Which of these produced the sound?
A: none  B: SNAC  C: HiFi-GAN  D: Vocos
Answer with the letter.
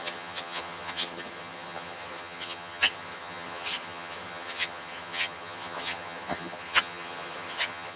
C